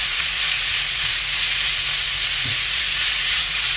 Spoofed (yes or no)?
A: yes